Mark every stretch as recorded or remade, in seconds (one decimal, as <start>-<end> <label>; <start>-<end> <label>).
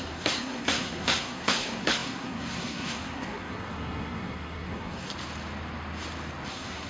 0.0-5.1 remade; 5.1-6.5 recorded; 6.5-6.9 remade